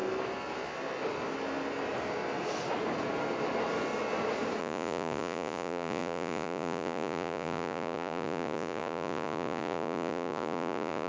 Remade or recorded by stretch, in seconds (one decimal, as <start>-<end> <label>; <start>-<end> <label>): 0.0-4.6 recorded; 4.6-11.1 remade